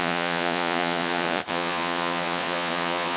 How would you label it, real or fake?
fake